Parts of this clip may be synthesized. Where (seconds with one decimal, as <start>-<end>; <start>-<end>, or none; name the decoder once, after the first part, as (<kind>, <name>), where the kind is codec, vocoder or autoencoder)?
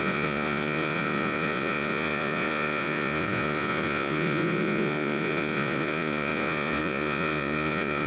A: 0.0-8.1 (vocoder, Vocos)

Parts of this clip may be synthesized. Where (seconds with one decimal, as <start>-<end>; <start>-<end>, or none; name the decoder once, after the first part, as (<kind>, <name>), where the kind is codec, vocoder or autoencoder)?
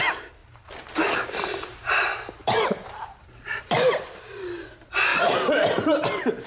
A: 0.4-1.9 (vocoder, BigVGAN v2); 2.4-3.9; 5.1-6.5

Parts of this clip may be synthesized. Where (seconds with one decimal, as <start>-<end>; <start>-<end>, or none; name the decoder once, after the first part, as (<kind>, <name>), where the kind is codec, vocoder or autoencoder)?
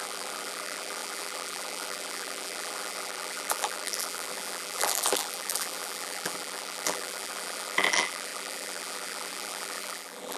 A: 0.0-10.4 (vocoder, BigVGAN v2)